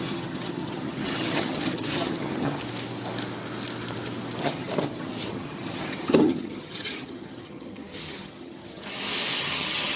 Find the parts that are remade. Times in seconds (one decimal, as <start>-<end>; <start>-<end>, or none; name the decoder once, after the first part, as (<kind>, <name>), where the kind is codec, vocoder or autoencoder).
0.0-2.6 (vocoder, HiFi-GAN); 4.4-8.8; 9.4-10.0